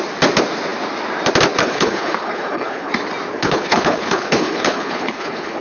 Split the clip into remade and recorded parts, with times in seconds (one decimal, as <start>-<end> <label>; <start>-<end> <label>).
0.0-1.6 recorded; 1.6-2.9 remade; 2.9-3.3 recorded; 3.3-5.6 remade